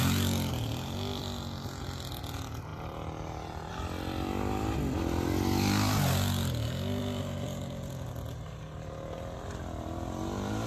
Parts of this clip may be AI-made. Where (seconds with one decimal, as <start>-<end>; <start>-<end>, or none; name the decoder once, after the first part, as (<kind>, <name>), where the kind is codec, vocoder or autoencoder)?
none